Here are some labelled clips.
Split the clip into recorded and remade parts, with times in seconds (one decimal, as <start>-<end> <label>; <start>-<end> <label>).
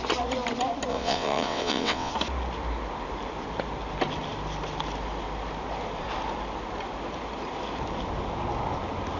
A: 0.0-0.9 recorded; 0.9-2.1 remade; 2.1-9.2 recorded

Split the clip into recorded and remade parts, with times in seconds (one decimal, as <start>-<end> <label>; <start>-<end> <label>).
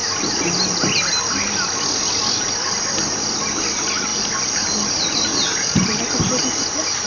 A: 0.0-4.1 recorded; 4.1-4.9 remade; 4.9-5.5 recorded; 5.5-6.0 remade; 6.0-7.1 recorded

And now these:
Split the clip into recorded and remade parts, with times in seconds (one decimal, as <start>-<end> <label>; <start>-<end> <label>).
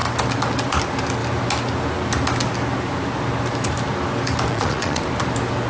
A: 0.0-4.5 recorded; 4.5-5.0 remade; 5.0-5.7 recorded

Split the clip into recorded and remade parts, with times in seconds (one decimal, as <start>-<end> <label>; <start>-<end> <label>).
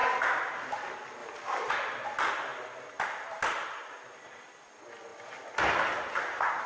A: 0.0-6.7 recorded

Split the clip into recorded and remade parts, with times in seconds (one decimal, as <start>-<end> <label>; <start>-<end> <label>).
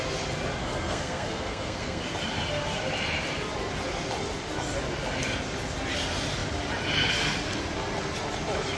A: 0.0-0.6 recorded; 0.6-2.0 remade; 2.0-8.8 recorded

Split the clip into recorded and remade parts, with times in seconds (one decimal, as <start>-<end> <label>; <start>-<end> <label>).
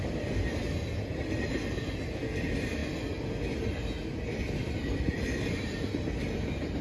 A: 0.0-6.8 recorded